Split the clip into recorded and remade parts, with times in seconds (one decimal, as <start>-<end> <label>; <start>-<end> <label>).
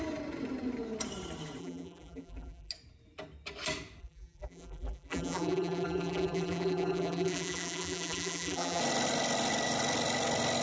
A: 0.0-1.6 recorded; 1.6-2.7 remade; 2.7-4.0 recorded; 4.0-8.8 remade; 8.8-10.6 recorded